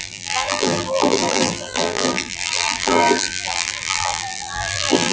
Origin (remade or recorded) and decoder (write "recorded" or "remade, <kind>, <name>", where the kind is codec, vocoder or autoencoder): remade, vocoder, BigVGAN v2